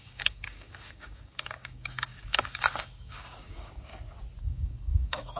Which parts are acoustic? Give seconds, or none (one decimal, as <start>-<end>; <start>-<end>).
3.9-4.4